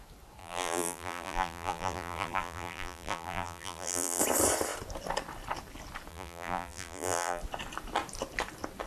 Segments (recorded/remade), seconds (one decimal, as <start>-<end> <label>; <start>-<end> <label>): 0.0-0.4 recorded; 0.4-4.2 remade; 4.2-6.1 recorded; 6.1-7.4 remade; 7.4-8.9 recorded

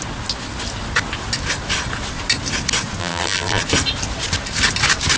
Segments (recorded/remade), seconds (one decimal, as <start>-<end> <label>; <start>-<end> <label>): 0.0-3.0 recorded; 3.0-3.6 remade; 3.6-5.2 recorded

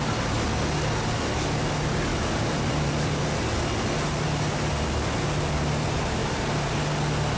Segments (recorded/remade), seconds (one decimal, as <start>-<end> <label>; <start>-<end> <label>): 0.0-2.1 recorded; 2.1-2.9 remade; 2.9-6.2 recorded; 6.2-6.7 remade; 6.7-7.4 recorded

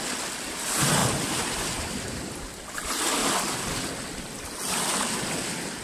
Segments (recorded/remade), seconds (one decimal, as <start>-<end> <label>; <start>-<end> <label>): 0.0-5.8 recorded

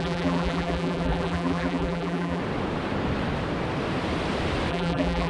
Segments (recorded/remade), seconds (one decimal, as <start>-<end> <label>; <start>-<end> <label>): 0.0-2.4 remade; 2.4-4.7 recorded; 4.7-5.3 remade

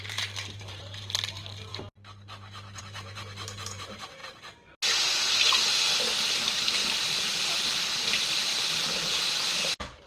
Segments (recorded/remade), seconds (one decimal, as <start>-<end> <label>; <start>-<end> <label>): 0.0-1.7 remade; 1.7-2.8 recorded; 2.8-4.2 remade; 4.2-5.7 recorded; 5.7-10.1 remade

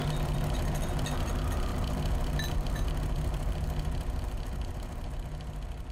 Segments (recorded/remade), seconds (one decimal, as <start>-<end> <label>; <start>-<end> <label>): 0.0-5.9 remade